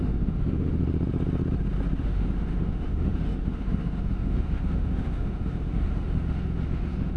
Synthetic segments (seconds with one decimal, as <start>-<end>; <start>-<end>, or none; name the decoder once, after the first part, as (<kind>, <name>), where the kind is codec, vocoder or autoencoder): 0.0-0.8 (autoencoder, DAC-VAE); 2.0-7.2